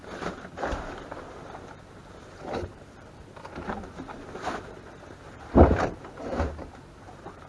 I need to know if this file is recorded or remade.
remade